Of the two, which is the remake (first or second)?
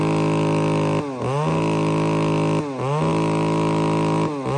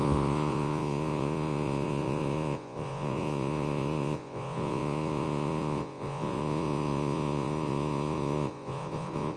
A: second